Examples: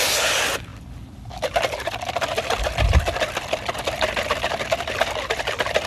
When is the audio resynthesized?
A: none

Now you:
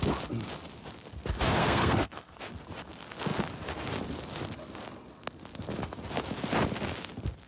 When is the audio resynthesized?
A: 1.6-2.4 (codec, SNAC)